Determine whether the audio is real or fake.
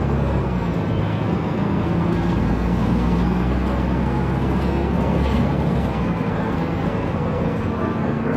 fake